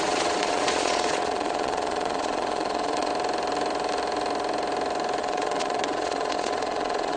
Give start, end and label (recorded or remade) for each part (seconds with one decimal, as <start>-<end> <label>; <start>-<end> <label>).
0.0-3.1 remade; 3.1-5.2 recorded; 5.2-7.2 remade

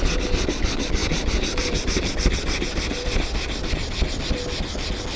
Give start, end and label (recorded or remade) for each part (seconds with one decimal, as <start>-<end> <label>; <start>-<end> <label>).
0.0-1.0 recorded; 1.0-3.7 remade; 3.7-5.2 recorded